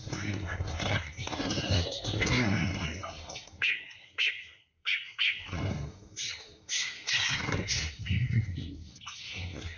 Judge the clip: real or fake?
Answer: fake